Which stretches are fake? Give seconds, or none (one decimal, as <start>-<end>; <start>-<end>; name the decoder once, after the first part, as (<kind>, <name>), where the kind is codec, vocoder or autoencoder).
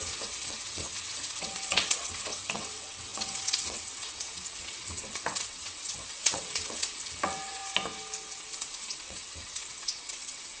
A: 0.0-7.6 (vocoder, WaveNeXt); 8.3-10.6